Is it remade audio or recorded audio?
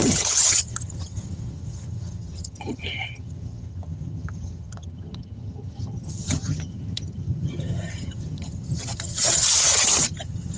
remade